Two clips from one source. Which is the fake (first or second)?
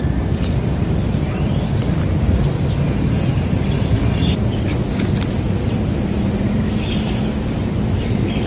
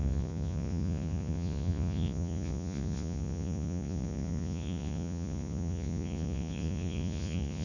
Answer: second